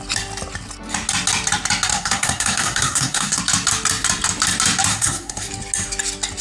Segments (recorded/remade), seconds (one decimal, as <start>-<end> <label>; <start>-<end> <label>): 0.0-1.9 recorded; 1.9-3.4 remade; 3.4-4.9 recorded; 4.9-5.5 remade; 5.5-6.4 recorded